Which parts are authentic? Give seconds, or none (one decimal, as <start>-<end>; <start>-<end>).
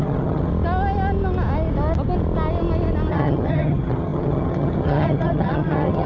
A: 0.5-3.1